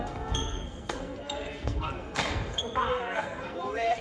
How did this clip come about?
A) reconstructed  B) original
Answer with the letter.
A